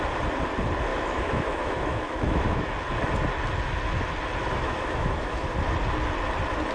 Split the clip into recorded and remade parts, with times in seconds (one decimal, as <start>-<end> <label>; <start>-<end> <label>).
0.0-0.9 recorded; 0.9-2.7 remade; 2.7-4.4 recorded; 4.4-5.4 remade; 5.4-6.7 recorded